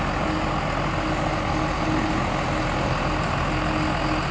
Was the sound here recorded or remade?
recorded